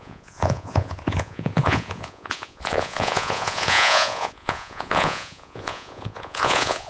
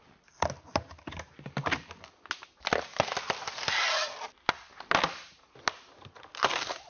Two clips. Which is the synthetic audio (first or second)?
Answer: first